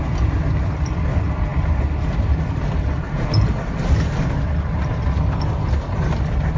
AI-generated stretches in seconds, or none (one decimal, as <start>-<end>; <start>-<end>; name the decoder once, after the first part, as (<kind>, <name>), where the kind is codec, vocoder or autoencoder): none